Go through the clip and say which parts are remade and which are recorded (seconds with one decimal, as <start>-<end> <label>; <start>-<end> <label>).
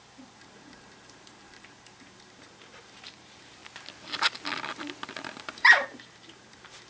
0.0-3.6 remade; 3.6-5.4 recorded; 5.4-6.9 remade